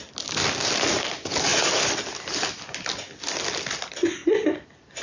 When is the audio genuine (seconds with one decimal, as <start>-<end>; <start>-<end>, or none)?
0.0-5.0